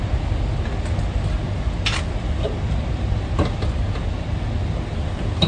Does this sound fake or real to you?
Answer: real